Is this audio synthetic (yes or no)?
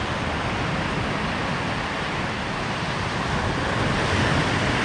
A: no